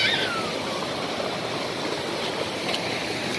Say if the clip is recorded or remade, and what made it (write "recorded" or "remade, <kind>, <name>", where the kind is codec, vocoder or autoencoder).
recorded